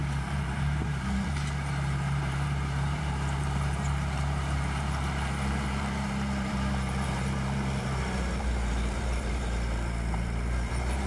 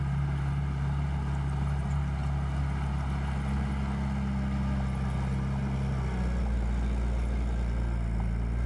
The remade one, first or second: first